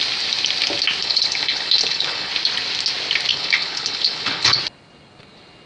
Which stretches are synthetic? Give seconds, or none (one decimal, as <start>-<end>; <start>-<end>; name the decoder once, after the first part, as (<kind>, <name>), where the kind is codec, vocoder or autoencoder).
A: 1.0-2.3 (codec, HILCodec); 3.3-4.6